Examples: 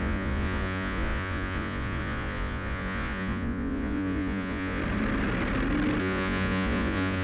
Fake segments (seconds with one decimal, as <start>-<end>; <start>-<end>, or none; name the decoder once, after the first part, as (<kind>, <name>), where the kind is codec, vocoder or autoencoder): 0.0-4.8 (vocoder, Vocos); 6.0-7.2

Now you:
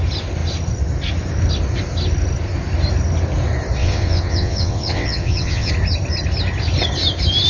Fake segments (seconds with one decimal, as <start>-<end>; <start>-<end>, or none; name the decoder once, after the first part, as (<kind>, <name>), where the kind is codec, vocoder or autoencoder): 3.8-5.7 (vocoder, WaveNeXt)

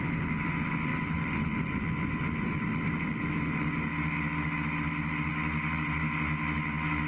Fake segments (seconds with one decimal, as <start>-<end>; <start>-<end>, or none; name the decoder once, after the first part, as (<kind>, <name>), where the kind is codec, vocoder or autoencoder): none

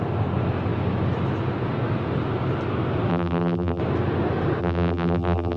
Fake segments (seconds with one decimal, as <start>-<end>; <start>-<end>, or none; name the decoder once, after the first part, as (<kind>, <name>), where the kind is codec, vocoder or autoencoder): 3.1-3.8 (vocoder, BigVGAN v2); 4.6-5.6

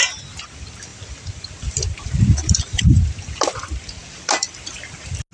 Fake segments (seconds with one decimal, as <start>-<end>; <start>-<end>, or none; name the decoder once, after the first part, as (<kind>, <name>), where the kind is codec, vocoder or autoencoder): 0.9-2.8 (vocoder, BigVGAN v2)